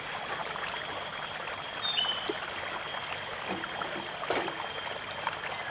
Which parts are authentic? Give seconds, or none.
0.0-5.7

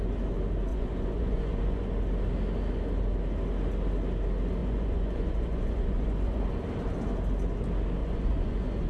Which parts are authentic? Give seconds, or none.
0.0-0.7; 1.9-4.6; 6.4-8.0

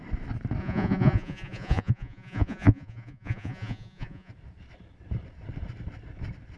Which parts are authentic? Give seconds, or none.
0.0-0.6; 4.3-6.6

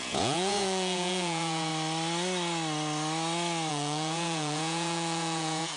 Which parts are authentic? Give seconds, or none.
1.7-3.7